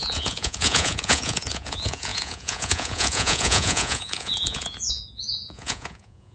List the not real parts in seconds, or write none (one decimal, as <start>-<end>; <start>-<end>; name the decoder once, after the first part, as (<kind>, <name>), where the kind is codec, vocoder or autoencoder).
0.0-6.3 (vocoder, Vocos)